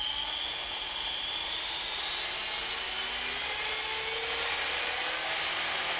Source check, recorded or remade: recorded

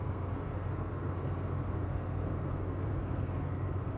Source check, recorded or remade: remade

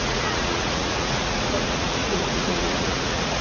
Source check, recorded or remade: remade